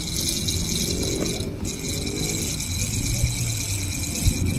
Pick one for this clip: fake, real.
real